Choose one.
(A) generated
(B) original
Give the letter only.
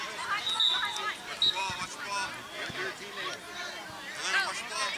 B